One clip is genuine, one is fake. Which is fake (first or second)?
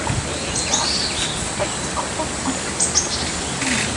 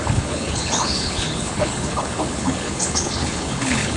second